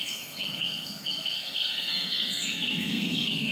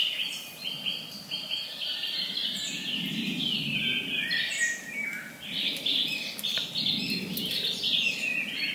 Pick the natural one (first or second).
second